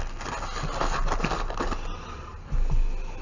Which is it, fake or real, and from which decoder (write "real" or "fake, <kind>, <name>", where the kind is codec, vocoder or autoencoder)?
real